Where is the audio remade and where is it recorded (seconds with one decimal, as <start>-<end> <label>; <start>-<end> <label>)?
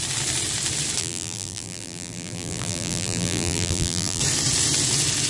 0.0-1.0 recorded; 1.0-4.2 remade; 4.2-5.3 recorded